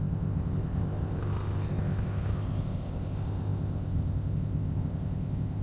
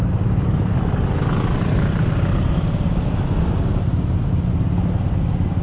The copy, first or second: first